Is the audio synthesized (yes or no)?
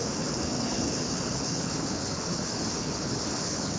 yes